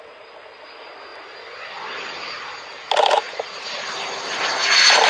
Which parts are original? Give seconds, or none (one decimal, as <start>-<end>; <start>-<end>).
0.0-5.1